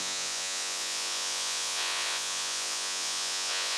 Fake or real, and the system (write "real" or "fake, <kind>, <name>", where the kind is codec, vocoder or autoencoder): fake, vocoder, Vocos